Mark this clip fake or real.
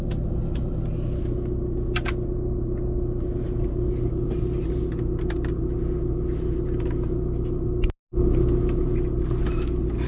real